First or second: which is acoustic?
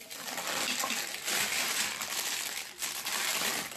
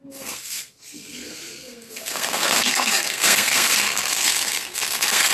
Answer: first